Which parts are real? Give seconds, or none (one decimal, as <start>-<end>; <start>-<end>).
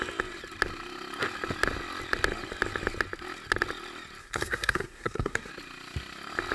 0.0-4.2; 5.5-6.5